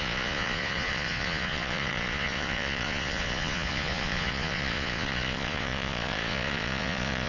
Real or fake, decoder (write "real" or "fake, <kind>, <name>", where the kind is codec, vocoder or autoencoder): fake, vocoder, Vocos